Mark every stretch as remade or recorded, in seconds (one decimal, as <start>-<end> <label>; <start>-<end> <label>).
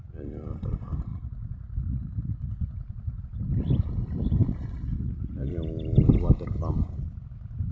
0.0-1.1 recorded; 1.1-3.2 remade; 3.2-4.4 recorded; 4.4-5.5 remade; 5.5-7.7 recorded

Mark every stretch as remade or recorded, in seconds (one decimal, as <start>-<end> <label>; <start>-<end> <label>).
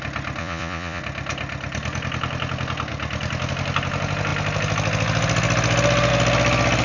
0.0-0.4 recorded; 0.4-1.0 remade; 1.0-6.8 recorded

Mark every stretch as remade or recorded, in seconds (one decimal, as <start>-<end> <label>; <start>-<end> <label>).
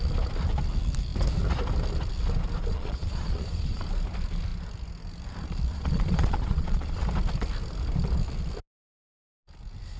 0.0-2.7 recorded; 2.7-3.8 remade; 3.8-5.7 recorded; 5.7-7.0 remade; 7.0-10.0 recorded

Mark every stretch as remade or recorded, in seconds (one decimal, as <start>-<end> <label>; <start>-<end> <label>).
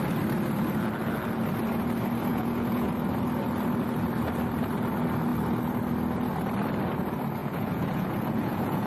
0.0-2.3 recorded; 2.3-2.9 remade; 2.9-7.4 recorded; 7.4-8.9 remade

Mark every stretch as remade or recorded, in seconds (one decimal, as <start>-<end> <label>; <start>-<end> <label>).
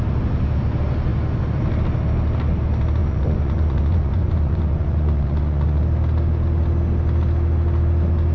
0.0-3.0 recorded; 3.0-5.8 remade; 5.8-8.3 recorded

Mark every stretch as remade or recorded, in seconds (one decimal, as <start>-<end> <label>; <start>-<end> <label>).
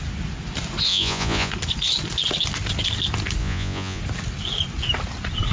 0.0-0.9 recorded; 0.9-1.5 remade; 1.5-3.4 recorded; 3.4-4.0 remade; 4.0-5.5 recorded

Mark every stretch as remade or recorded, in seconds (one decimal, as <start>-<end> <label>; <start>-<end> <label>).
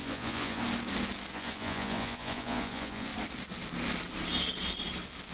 0.0-0.6 remade; 0.6-1.3 recorded; 1.3-3.1 remade; 3.1-5.3 recorded